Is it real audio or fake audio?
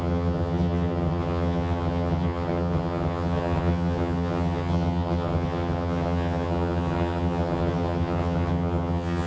fake